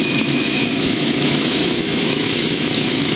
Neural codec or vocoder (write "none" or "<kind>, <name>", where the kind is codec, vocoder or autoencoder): autoencoder, DAC-VAE